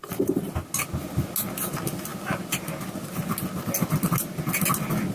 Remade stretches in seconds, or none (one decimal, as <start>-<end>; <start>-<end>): none

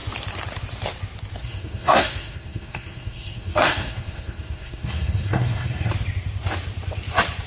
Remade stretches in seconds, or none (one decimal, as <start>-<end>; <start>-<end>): 1.4-5.9

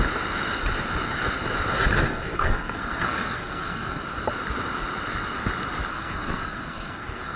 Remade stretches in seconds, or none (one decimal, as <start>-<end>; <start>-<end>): 2.1-4.0; 5.9-7.4

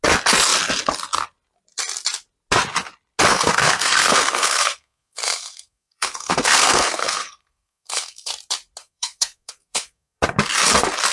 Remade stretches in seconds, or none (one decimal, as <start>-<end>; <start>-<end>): 3.3-8.3; 8.8-10.2

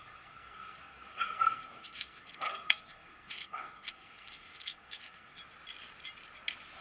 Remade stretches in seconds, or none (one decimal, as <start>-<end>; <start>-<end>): 0.0-5.4